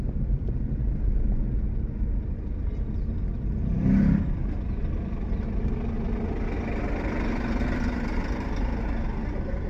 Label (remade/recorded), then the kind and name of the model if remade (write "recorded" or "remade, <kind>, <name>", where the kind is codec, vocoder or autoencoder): recorded